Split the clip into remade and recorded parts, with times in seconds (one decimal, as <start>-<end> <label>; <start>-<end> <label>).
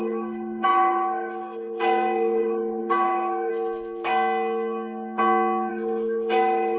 0.0-3.5 remade; 3.5-5.7 recorded; 5.7-6.8 remade